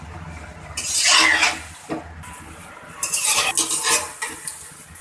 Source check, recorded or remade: recorded